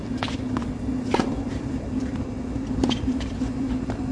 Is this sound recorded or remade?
remade